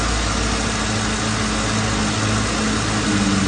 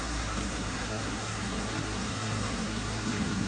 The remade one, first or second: second